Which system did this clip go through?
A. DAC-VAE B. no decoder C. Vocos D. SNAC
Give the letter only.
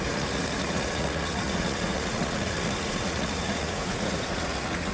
C